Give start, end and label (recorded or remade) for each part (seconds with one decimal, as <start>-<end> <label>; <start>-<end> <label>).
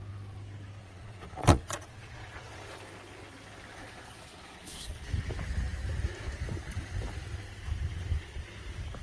0.0-0.8 recorded; 0.8-2.8 remade; 2.8-3.7 recorded; 3.7-5.1 remade; 5.1-9.0 recorded